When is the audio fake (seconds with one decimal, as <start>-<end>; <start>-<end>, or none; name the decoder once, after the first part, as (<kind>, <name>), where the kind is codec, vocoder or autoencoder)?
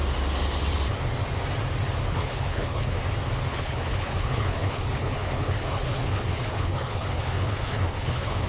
2.1-3.0 (codec, HILCodec); 3.5-8.5